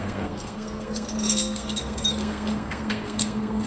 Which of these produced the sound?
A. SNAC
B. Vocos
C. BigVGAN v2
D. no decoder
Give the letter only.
A